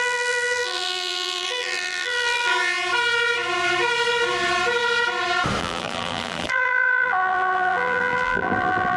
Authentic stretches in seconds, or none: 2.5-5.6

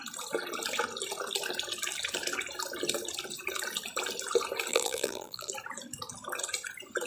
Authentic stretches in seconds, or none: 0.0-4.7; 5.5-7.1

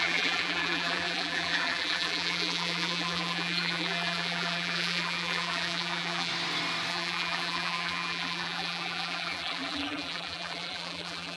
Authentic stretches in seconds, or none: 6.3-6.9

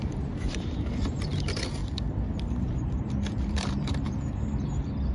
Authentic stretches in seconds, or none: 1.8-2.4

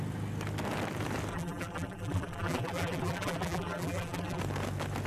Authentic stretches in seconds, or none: 0.0-1.3; 4.4-5.1

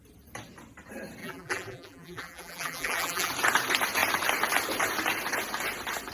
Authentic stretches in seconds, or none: 0.0-1.2; 3.3-6.1